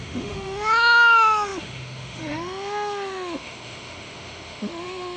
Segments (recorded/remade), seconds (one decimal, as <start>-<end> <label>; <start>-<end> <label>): 0.0-5.2 remade